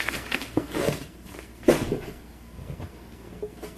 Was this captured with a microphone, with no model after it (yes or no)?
no